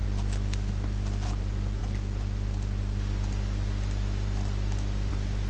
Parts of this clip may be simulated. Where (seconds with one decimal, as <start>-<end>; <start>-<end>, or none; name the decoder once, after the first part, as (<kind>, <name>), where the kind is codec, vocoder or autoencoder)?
none

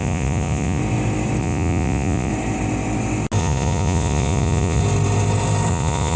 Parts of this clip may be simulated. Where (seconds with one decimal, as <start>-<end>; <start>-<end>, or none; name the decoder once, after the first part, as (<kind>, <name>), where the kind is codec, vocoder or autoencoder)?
0.0-0.8 (vocoder, Vocos); 1.4-2.3; 3.4-4.8; 5.7-6.2

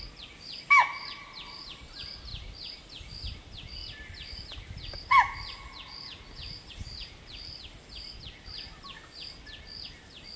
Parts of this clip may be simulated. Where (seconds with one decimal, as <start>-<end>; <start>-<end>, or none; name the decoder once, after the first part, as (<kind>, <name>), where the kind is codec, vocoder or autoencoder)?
none

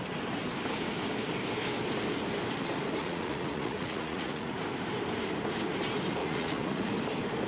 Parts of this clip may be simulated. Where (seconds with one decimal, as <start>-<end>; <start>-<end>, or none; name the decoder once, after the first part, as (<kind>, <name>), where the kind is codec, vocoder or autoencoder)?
3.0-4.5 (vocoder, Vocos); 6.2-6.9